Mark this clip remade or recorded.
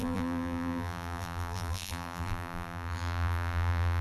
remade